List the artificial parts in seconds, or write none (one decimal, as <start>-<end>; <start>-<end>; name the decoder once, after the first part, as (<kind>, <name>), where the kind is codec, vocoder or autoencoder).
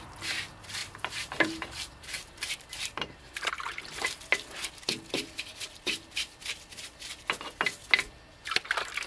0.8-3.5 (vocoder, BigVGAN v2)